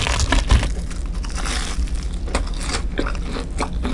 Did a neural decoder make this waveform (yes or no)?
no